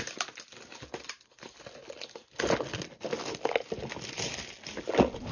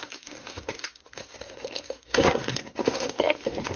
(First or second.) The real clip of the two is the first